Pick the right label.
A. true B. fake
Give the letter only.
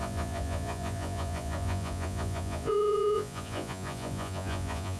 B